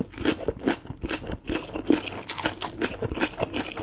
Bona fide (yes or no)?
yes